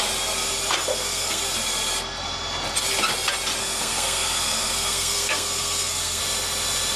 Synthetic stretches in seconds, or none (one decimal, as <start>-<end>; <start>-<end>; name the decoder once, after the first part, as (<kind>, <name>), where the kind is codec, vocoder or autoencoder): 0.9-1.4 (codec, SNAC); 3.6-6.2